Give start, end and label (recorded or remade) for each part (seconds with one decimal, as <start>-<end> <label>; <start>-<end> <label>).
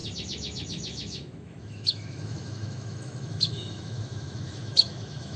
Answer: 0.0-5.4 remade